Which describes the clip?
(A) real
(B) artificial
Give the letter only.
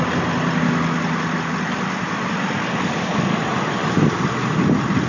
A